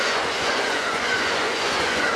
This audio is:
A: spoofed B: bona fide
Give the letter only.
A